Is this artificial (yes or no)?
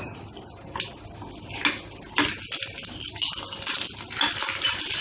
no